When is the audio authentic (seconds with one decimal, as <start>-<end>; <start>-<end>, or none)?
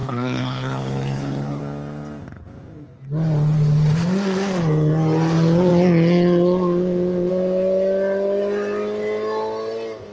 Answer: 1.6-10.1